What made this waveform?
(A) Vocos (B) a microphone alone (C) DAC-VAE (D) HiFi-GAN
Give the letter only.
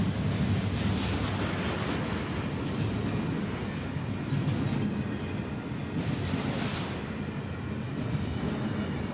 B